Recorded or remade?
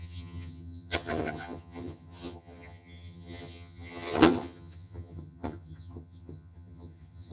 remade